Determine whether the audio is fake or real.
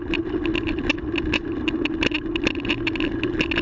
real